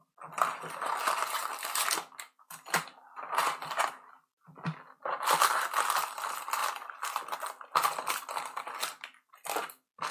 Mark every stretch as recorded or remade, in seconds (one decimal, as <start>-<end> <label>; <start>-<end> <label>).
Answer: 0.0-10.1 recorded